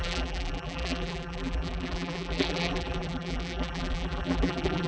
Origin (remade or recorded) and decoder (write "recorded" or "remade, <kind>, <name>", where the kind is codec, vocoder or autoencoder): remade, vocoder, BigVGAN v2